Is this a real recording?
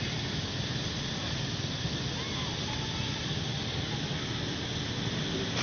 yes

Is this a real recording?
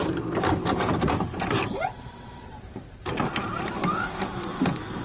no